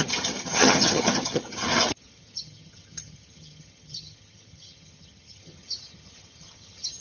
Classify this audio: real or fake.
fake